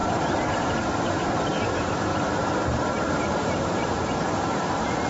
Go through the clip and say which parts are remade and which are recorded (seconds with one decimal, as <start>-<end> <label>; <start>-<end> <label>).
0.0-1.3 remade; 1.3-2.1 recorded; 2.1-5.1 remade